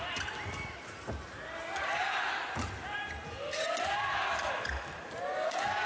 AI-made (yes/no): no